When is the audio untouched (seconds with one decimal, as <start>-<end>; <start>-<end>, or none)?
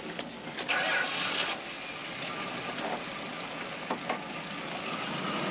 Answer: 0.0-5.5